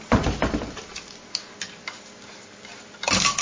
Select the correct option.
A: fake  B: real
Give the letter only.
B